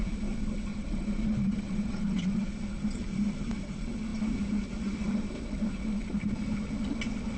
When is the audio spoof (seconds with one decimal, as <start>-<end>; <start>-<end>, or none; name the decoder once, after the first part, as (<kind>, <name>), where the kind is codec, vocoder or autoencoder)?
0.7-2.5 (vocoder, BigVGAN v2)

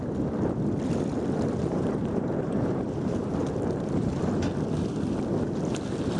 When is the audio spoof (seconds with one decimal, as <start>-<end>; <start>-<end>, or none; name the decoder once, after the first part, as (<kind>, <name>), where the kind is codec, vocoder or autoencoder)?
1.6-4.2 (vocoder, BigVGAN v2)